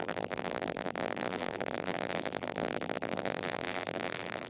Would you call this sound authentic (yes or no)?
no